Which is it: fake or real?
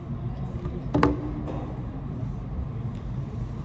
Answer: real